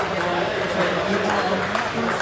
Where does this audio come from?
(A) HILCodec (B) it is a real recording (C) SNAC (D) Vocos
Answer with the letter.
B